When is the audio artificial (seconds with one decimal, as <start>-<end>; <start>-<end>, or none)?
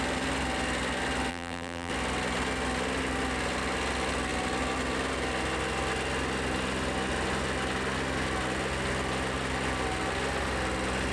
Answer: 1.3-1.9